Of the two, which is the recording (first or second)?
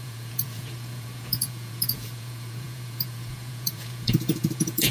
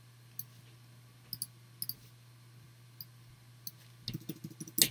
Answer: second